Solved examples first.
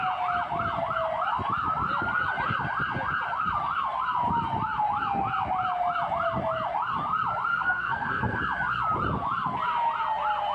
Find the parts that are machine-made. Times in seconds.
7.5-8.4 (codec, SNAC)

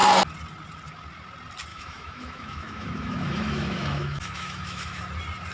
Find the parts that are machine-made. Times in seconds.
1.7-5.0 (autoencoder, DAC-VAE)

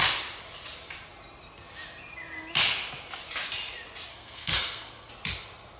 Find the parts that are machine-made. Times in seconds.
4.1-5.1 (codec, SNAC)